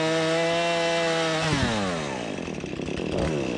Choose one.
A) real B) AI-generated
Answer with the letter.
A